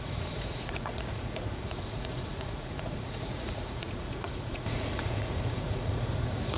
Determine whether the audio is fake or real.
fake